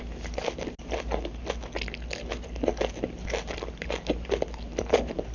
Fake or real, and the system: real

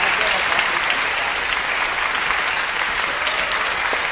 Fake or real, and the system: real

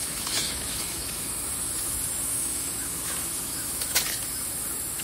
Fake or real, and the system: fake, autoencoder, DAC-VAE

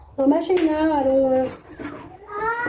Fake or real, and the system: real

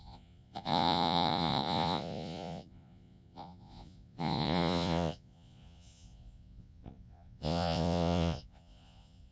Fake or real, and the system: fake, vocoder, Vocos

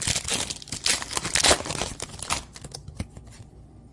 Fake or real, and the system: real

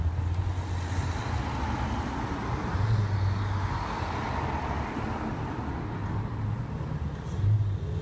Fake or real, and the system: real